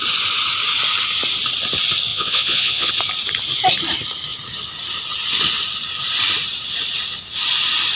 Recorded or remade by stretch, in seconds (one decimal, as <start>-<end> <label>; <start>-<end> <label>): 0.0-2.1 recorded; 2.1-2.9 remade; 2.9-8.0 recorded